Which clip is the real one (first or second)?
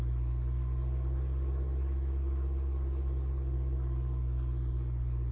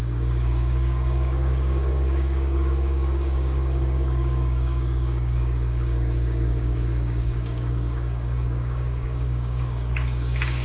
first